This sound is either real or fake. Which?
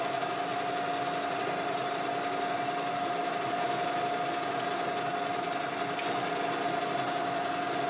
real